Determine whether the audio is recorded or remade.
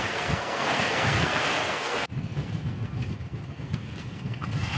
remade